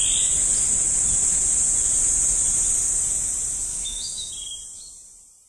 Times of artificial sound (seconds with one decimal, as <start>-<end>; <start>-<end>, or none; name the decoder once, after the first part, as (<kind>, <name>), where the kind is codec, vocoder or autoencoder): 3.7-4.3 (autoencoder, DAC-VAE)